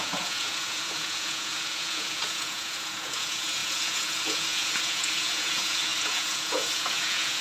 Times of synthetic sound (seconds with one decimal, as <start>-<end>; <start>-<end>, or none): 0.0-7.4